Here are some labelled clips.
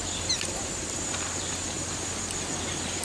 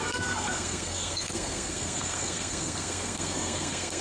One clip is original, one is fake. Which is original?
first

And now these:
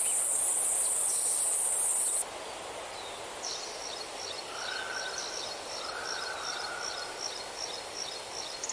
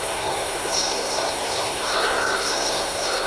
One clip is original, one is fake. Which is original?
first